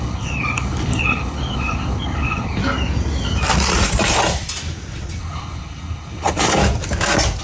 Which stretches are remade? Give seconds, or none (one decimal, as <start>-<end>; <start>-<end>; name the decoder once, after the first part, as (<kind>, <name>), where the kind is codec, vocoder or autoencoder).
0.0-2.6 (codec, HILCodec); 5.2-6.6